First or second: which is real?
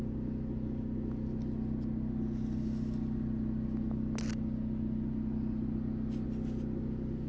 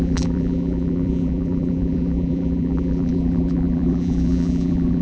first